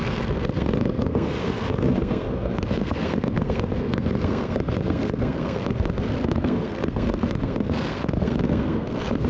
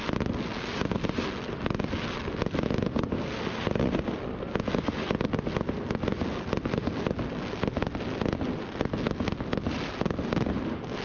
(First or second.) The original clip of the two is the second